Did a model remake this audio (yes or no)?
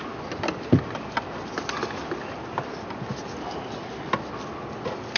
no